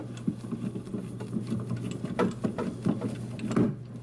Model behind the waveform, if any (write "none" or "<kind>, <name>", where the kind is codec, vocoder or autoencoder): none